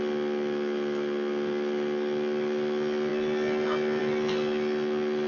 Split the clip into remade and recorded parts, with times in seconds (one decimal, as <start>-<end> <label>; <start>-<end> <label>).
0.0-5.3 recorded